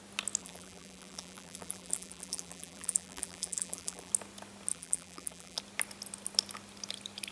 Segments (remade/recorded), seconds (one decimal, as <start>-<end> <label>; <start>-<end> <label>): 0.0-0.4 recorded; 0.4-4.1 remade; 4.1-4.7 recorded; 4.7-5.6 remade; 5.6-7.3 recorded